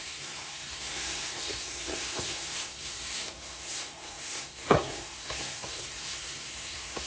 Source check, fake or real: fake